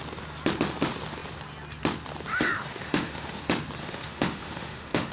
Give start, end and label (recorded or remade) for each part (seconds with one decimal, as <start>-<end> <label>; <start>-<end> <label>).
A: 0.0-2.3 recorded; 2.3-3.4 remade; 3.4-3.8 recorded; 3.8-5.1 remade